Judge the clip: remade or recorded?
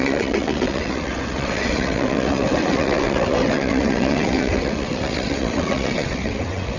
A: remade